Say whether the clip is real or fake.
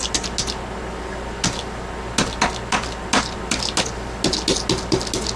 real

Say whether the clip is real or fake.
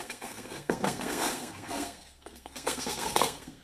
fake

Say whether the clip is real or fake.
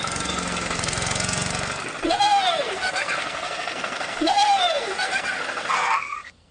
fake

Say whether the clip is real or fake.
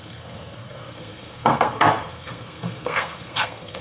fake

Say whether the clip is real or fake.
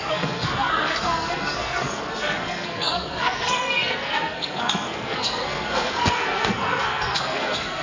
fake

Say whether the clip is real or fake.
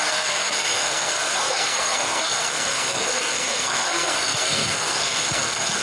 fake